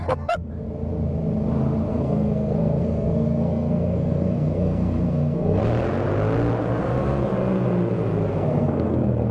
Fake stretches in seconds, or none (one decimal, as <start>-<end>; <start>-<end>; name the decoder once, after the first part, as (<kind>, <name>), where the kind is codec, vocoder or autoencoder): 0.0-0.5 (codec, SNAC); 1.9-5.6; 8.3-9.3